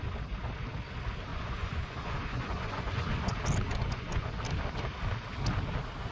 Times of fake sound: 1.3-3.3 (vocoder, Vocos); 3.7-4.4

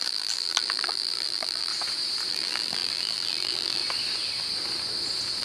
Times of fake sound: 0.0-1.7 (vocoder, BigVGAN v2); 2.3-3.8

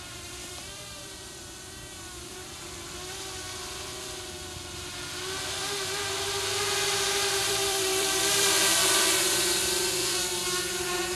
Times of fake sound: 0.0-2.3 (vocoder, BigVGAN v2); 7.4-11.1

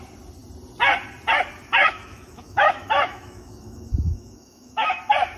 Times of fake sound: 1.8-5.0 (autoencoder, DAC-VAE)

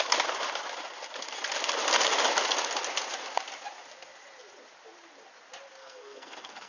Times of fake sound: 5.8-6.7 (codec, SNAC)

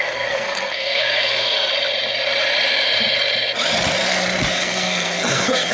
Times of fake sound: 0.0-1.7 (codec, SNAC); 4.5-5.7